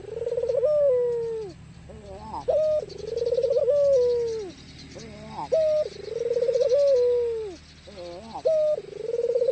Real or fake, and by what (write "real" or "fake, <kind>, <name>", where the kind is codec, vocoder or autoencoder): real